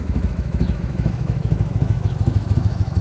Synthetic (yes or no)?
yes